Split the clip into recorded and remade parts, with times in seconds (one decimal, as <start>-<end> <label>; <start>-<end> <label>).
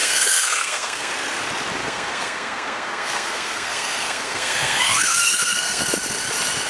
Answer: 0.0-1.1 remade; 1.1-1.8 recorded; 1.8-5.8 remade; 5.8-6.7 recorded